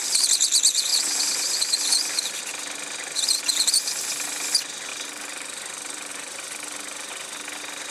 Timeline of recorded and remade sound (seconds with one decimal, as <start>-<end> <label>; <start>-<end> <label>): 0.0-4.9 recorded; 4.9-6.1 remade; 6.1-7.9 recorded